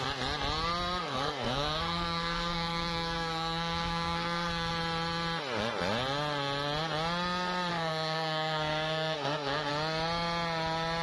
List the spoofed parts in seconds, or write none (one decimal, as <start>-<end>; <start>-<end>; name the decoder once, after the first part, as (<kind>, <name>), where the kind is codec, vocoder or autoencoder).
1.0-4.7 (codec, SNAC); 7.7-9.7